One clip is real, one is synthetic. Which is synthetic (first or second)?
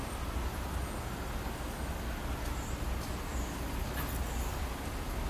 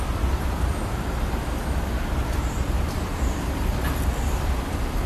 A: second